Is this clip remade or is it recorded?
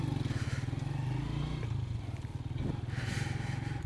recorded